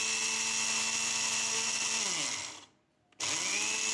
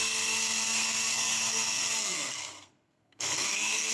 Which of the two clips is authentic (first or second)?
first